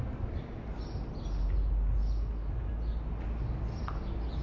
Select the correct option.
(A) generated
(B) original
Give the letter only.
B